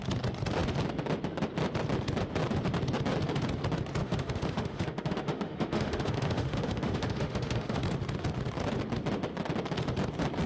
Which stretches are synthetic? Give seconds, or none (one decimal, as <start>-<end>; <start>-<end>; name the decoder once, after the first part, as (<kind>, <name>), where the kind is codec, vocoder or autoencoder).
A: 4.0-7.8 (autoencoder, DAC-VAE)